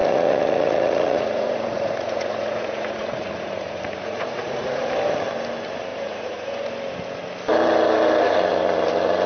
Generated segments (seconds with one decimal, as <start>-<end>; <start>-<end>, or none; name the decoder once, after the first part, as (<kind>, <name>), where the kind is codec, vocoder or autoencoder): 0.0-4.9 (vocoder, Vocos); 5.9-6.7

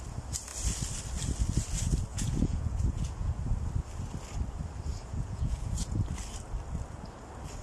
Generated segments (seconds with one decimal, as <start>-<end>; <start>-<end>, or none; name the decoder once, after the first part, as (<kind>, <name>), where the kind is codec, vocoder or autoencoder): 2.1-3.3 (vocoder, Vocos); 4.9-6.0

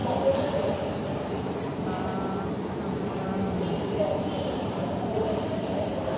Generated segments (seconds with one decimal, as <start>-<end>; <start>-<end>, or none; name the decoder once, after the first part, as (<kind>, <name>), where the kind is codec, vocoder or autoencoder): 0.0-6.2 (vocoder, BigVGAN v2)

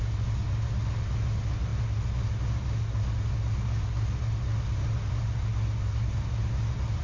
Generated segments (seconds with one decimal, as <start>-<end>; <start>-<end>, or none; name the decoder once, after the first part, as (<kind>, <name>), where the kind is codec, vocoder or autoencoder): none

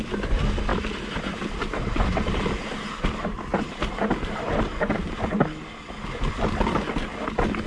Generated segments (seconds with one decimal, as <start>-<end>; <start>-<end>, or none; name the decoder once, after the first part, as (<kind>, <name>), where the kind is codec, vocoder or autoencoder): 3.5-5.0 (vocoder, BigVGAN v2)

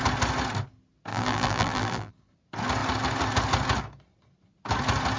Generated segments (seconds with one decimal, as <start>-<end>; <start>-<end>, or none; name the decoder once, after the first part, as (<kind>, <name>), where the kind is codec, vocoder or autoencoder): 1.1-2.1 (vocoder, BigVGAN v2)